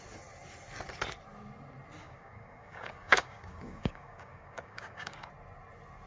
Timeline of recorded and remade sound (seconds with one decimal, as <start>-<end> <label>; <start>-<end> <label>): 0.0-2.0 recorded; 2.0-5.3 remade; 5.3-6.1 recorded